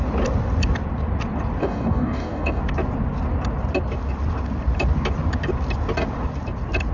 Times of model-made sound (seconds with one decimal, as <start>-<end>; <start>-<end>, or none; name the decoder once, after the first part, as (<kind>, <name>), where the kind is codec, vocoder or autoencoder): 1.6-2.6 (codec, DAC)